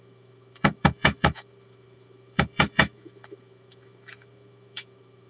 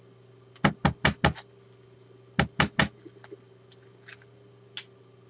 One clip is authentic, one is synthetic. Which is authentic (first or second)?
second